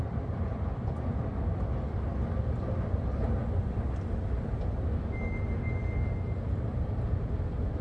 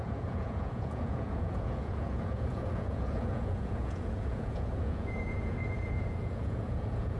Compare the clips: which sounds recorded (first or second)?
first